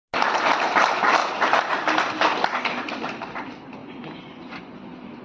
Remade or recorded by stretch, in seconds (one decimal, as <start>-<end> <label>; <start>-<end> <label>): 0.0-3.8 recorded; 3.8-4.7 remade; 4.7-5.2 recorded